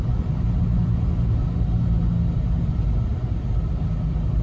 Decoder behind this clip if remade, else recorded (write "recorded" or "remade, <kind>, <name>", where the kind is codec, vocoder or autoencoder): recorded